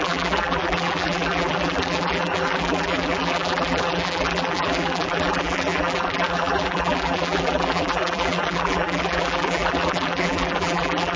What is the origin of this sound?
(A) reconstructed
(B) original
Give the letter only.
A